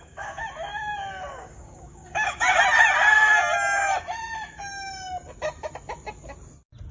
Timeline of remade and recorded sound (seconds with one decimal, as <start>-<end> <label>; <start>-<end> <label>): 0.0-0.4 remade; 0.4-1.3 recorded; 1.3-2.5 remade; 2.5-6.9 recorded